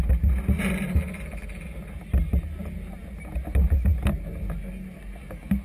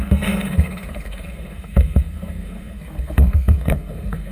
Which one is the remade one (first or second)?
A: second